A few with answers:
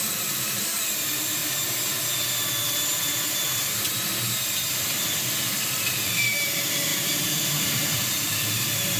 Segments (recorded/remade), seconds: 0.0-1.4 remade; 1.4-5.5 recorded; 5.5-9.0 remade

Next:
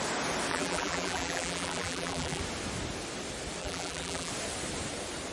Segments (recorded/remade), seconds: 0.0-0.5 recorded; 0.5-2.4 remade; 2.4-3.6 recorded; 3.6-4.3 remade; 4.3-5.3 recorded

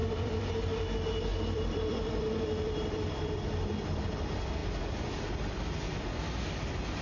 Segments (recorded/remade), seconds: 0.0-0.5 remade; 0.5-1.3 recorded; 1.3-4.1 remade; 4.1-7.0 recorded